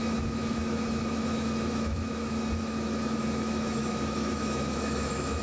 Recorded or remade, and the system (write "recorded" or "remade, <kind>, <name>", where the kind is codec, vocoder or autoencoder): remade, autoencoder, DAC-VAE